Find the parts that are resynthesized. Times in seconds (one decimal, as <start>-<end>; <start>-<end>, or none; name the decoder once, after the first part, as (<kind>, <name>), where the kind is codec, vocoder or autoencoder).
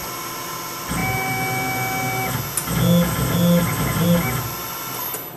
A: none